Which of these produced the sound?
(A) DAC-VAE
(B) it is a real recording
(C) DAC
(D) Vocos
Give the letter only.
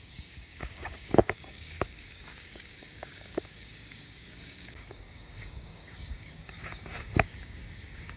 C